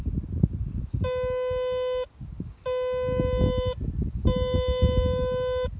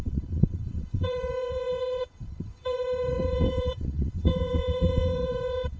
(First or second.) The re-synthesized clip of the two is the second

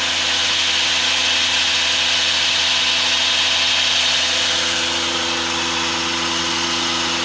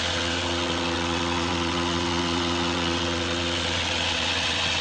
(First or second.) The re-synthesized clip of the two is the second